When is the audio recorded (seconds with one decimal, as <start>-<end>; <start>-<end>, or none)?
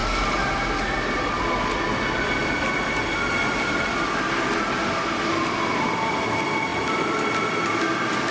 0.0-8.3